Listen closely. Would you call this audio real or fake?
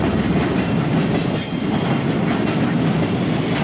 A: real